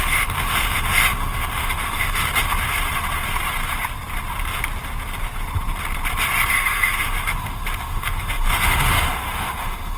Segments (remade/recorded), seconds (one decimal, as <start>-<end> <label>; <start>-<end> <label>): 0.0-2.2 remade; 2.2-6.5 recorded; 6.5-10.0 remade